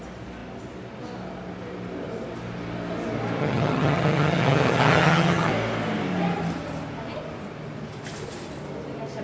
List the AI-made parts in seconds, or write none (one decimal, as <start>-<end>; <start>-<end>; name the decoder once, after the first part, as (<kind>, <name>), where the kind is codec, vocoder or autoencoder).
3.4-5.5 (vocoder, HiFi-GAN)